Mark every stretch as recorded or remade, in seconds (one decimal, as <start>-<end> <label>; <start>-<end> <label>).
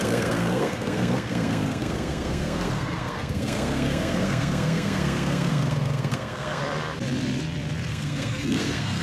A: 0.0-6.6 remade; 6.6-7.9 recorded; 7.9-9.0 remade